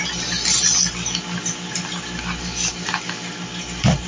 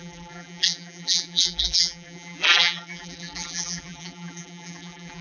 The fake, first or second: second